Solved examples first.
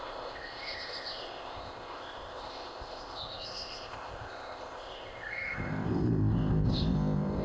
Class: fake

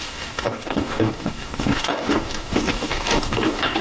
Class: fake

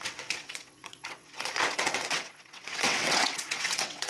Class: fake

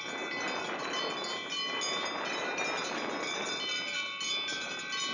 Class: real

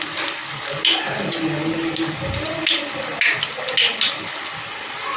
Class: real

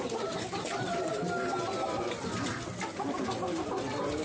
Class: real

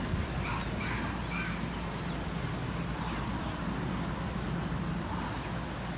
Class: real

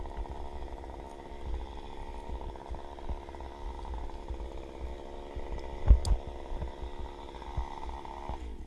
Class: real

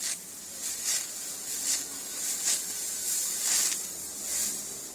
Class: real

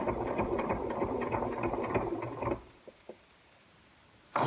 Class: fake